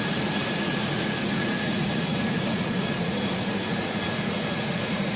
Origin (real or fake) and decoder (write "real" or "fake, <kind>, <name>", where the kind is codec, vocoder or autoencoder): fake, vocoder, Vocos